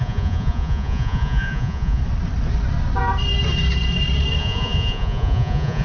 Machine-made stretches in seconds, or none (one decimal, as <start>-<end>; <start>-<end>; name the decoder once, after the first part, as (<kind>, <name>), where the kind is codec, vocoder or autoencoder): 0.0-2.0 (vocoder, Vocos); 4.4-5.8